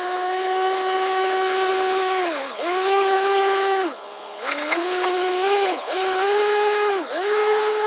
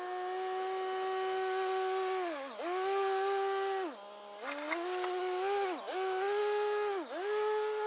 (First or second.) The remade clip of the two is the first